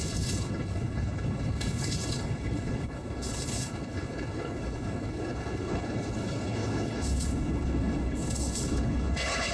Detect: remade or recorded remade